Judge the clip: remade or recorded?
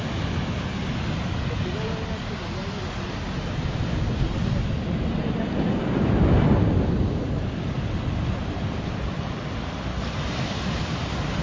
recorded